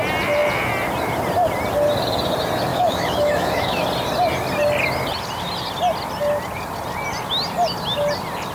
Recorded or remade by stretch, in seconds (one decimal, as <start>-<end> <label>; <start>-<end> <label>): 0.0-2.7 recorded; 2.7-3.8 remade; 3.8-8.5 recorded

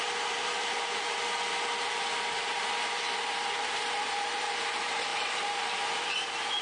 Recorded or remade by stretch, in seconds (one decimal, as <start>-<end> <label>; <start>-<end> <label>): 0.0-1.2 remade; 1.2-2.6 recorded; 2.6-6.6 remade

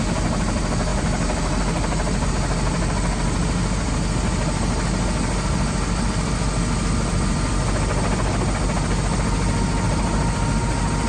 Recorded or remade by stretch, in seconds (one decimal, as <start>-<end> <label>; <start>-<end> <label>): 0.0-11.1 recorded

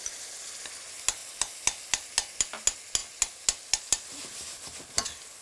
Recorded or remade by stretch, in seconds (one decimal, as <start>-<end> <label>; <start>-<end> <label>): 0.0-5.4 recorded

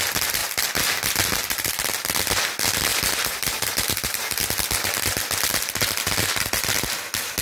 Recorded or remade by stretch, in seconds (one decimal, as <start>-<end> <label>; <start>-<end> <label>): 0.0-2.9 recorded; 2.9-4.4 remade; 4.4-7.4 recorded

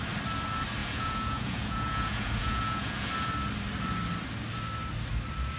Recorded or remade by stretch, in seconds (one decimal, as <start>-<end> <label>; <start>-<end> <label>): 0.0-0.8 recorded; 0.8-3.1 remade; 3.1-5.6 recorded

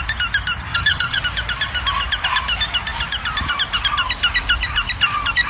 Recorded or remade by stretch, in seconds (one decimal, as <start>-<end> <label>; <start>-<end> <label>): 0.0-0.7 recorded; 0.7-1.2 remade; 1.2-5.5 recorded

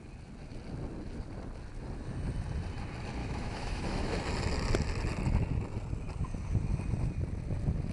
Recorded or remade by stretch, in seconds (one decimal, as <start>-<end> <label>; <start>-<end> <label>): 0.0-3.2 recorded; 3.2-4.2 remade; 4.2-7.9 recorded